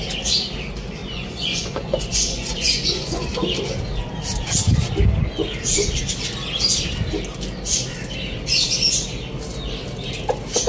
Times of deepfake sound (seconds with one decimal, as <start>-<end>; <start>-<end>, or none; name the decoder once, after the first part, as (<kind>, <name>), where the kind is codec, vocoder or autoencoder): 1.0-3.3 (vocoder, Vocos)